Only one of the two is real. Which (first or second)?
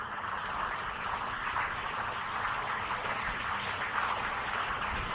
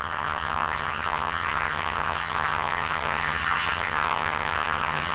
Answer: first